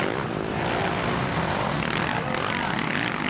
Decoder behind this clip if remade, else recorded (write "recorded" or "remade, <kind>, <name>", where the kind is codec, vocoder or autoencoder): recorded